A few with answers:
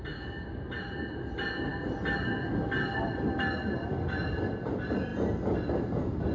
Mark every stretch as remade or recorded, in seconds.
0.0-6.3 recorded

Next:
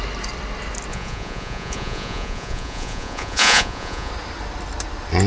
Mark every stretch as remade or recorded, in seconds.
0.0-0.9 recorded; 0.9-4.1 remade; 4.1-5.3 recorded

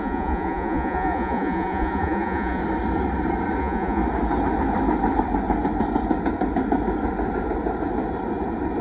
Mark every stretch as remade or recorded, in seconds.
0.0-2.6 remade; 2.6-3.6 recorded; 3.6-4.0 remade; 4.0-8.8 recorded